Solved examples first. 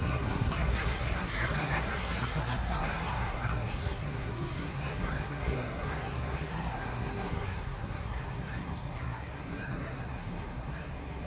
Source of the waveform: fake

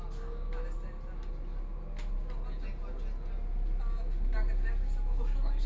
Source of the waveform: real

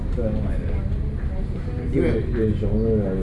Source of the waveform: real